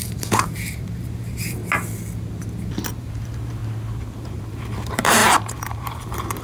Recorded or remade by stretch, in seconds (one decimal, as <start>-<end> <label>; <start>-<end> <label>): 0.0-1.6 remade; 1.6-3.0 recorded; 3.0-3.6 remade; 3.6-4.2 recorded; 4.2-6.4 remade